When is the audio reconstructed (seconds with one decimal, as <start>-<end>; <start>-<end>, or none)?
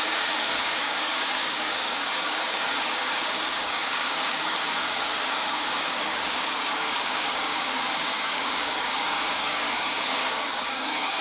0.0-11.2